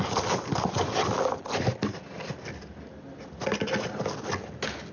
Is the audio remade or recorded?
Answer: recorded